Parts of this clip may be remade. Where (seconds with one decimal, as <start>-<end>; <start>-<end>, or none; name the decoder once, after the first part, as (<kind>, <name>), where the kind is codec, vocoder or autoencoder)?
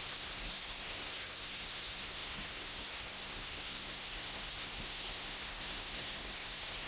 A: 0.0-6.9 (codec, SNAC)